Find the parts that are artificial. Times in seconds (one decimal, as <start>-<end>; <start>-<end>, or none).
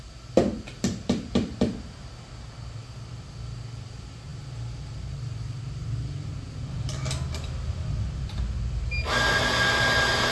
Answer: none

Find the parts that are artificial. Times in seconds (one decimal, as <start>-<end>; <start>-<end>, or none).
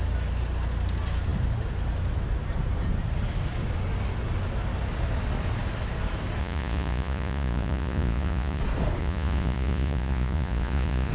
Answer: 6.4-8.6; 9.0-11.1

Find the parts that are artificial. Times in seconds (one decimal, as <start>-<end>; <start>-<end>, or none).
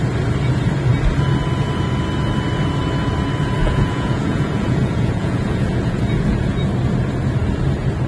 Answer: 3.6-6.7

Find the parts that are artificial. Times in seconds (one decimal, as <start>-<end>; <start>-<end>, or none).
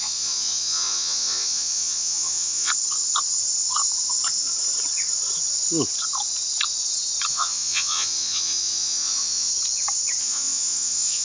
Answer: 0.0-2.7; 7.3-9.5; 10.2-11.2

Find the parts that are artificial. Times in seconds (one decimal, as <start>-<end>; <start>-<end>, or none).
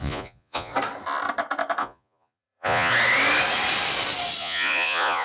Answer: 0.0-0.7; 1.8-2.9; 4.4-5.2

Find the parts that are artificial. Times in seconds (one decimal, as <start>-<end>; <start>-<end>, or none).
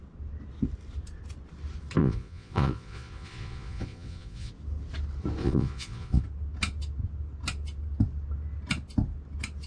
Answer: 2.0-4.5; 5.4-6.2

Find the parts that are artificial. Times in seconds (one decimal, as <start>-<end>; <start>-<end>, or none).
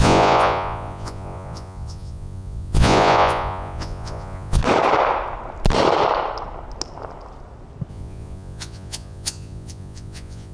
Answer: 0.0-4.6; 7.9-10.5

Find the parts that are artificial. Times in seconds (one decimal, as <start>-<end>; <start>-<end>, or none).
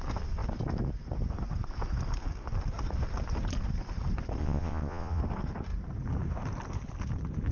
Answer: 4.4-5.2